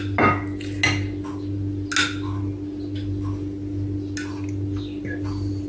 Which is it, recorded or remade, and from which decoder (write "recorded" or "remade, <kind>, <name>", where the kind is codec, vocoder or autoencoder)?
recorded